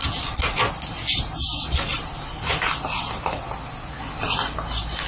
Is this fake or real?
real